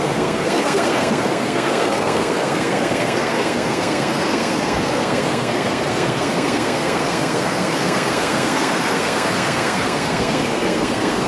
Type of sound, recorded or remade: remade